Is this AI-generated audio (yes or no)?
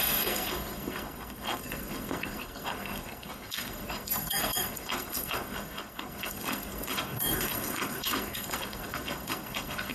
yes